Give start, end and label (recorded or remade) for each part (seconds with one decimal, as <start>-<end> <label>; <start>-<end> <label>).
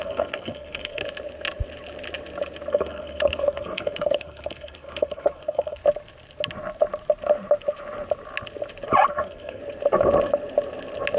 0.0-1.0 remade; 1.0-2.7 recorded; 2.7-5.8 remade; 5.8-9.1 recorded; 9.1-9.6 remade; 9.6-11.2 recorded